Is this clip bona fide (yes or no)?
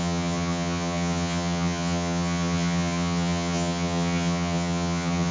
no